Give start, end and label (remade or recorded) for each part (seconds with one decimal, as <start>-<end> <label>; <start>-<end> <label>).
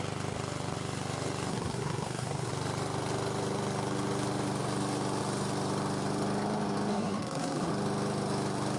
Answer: 0.0-1.5 recorded; 1.5-2.5 remade; 2.5-6.9 recorded; 6.9-7.7 remade; 7.7-8.8 recorded